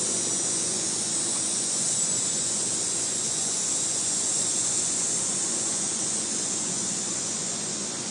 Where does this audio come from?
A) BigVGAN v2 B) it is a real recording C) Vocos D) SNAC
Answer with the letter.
C